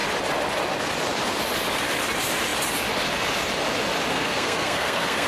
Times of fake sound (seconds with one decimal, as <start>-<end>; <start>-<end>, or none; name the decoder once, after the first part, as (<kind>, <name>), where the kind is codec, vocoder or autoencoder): 4.1-5.3 (codec, SNAC)